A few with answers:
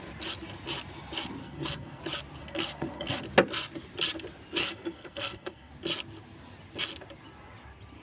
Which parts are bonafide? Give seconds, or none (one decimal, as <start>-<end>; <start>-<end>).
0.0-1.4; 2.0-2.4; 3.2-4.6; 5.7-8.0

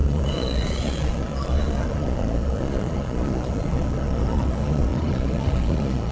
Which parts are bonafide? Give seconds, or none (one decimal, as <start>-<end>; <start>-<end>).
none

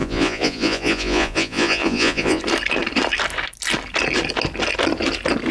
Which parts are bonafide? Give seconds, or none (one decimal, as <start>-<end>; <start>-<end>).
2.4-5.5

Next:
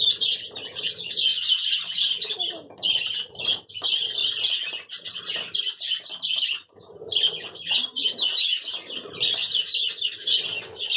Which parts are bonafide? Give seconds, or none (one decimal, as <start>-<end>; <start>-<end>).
0.0-1.3; 2.2-4.2; 5.2-11.0

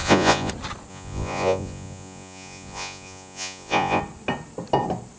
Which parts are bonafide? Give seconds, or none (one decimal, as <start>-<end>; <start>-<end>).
0.5-0.9; 4.0-5.2

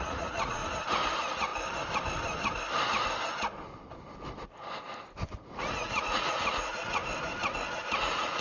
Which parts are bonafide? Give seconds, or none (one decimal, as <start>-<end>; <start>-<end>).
0.6-1.1; 1.5-5.6; 7.0-8.0

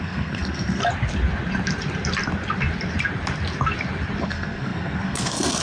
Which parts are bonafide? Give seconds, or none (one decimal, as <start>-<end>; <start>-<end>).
0.8-4.2

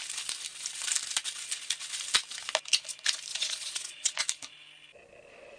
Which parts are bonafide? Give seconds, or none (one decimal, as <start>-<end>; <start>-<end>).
0.0-3.3; 4.2-5.6